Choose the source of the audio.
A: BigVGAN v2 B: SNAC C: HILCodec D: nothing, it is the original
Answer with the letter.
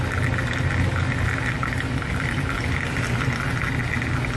D